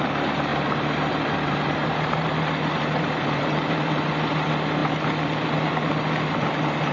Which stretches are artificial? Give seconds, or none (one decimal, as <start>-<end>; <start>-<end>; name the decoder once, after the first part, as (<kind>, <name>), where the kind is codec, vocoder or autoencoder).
0.5-4.1 (vocoder, BigVGAN v2)